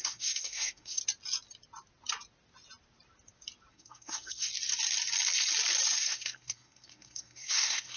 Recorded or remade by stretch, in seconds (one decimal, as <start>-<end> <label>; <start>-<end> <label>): 0.0-1.0 remade; 1.0-3.7 recorded; 3.7-4.5 remade; 4.5-6.0 recorded; 6.0-8.0 remade